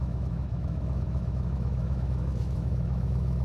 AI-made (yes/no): yes